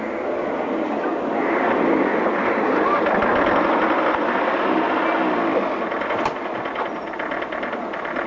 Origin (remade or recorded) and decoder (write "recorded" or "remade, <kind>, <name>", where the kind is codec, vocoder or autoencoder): recorded